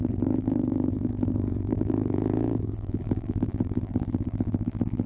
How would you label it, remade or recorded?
remade